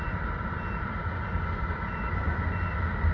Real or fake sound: fake